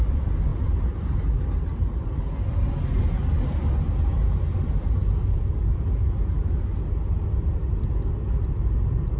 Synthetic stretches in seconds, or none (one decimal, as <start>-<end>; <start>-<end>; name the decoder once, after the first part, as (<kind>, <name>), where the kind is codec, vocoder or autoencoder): none